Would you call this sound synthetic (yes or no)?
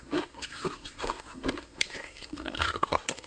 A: yes